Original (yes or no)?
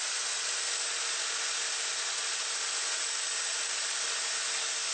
yes